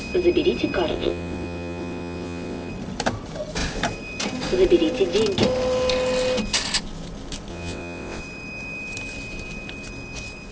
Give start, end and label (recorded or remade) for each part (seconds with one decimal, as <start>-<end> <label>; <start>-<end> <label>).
0.0-0.9 recorded; 0.9-2.7 remade; 2.7-7.5 recorded; 7.5-8.2 remade; 8.2-10.5 recorded